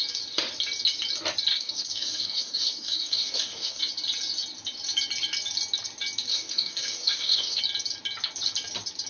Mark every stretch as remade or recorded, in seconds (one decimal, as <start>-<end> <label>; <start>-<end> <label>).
0.0-1.5 recorded; 1.5-3.8 remade; 3.8-6.3 recorded; 6.3-7.6 remade; 7.6-9.1 recorded